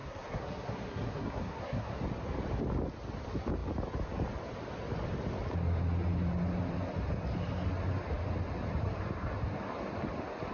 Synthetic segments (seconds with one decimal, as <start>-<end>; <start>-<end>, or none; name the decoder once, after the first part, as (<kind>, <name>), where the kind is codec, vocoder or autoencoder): 0.0-2.0 (codec, SNAC)